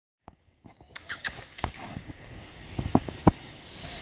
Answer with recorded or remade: remade